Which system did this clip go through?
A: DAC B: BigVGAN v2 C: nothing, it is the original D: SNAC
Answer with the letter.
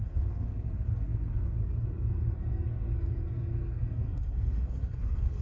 D